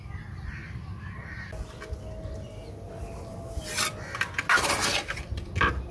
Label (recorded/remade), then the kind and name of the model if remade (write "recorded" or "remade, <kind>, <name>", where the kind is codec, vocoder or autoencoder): recorded